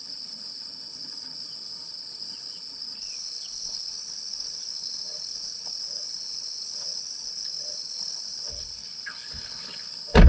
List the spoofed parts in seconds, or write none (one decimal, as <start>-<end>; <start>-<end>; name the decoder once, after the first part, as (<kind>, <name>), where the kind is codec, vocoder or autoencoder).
0.0-10.3 (codec, HILCodec)